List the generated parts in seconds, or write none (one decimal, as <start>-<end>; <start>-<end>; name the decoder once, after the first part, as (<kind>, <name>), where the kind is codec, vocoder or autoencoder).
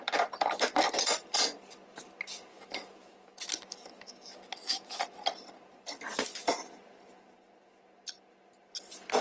2.5-5.0 (autoencoder, DAC-VAE)